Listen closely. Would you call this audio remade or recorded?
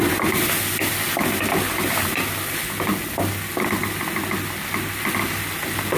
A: recorded